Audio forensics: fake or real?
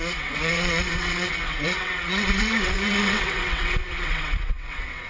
fake